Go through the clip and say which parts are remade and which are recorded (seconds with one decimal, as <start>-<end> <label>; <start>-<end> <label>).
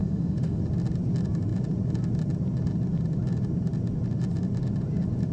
0.0-0.6 remade; 0.6-5.3 recorded